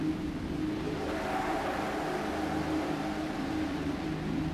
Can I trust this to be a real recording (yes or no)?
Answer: no